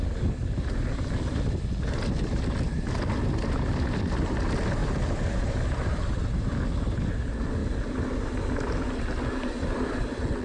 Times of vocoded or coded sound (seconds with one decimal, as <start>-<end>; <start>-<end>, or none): 4.8-5.4; 7.6-9.0